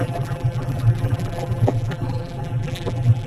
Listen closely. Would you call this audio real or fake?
fake